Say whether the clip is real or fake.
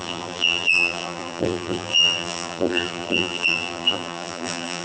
fake